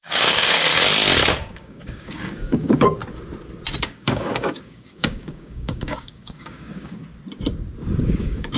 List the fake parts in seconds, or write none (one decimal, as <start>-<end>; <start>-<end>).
0.0-0.7; 1.3-3.0; 3.8-7.0; 8.0-8.6